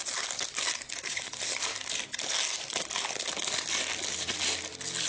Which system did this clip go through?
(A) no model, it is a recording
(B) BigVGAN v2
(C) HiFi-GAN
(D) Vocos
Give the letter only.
A